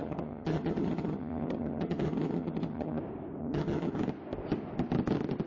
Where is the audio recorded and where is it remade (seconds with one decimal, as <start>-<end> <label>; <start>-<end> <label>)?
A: 0.0-3.0 remade; 3.0-3.4 recorded; 3.4-4.0 remade; 4.0-5.5 recorded

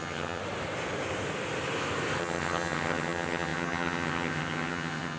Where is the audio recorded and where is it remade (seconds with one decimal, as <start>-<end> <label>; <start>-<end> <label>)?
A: 0.0-0.4 remade; 0.4-2.2 recorded; 2.2-5.2 remade

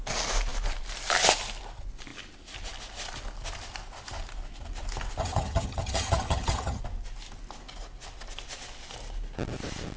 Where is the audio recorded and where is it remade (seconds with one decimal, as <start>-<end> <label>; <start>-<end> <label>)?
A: 0.0-5.2 recorded; 5.2-6.8 remade; 6.8-10.0 recorded

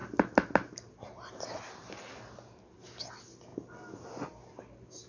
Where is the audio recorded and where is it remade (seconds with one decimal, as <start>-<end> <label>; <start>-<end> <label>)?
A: 0.0-5.1 recorded

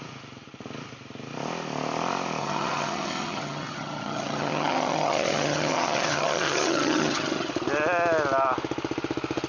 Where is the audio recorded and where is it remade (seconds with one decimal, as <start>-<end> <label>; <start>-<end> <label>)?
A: 0.0-2.4 recorded; 2.4-7.5 remade; 7.5-9.5 recorded

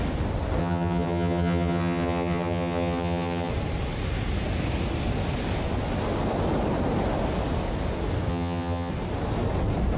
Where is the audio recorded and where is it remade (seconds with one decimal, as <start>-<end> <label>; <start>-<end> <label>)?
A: 0.0-0.6 recorded; 0.6-3.5 remade; 3.5-8.3 recorded; 8.3-8.9 remade; 8.9-10.0 recorded

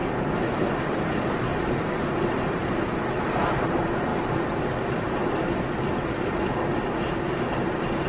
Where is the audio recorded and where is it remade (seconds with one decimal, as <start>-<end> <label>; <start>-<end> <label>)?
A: 0.0-8.1 recorded